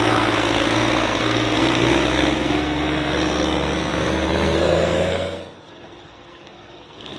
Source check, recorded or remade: remade